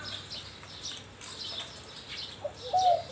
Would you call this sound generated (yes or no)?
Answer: no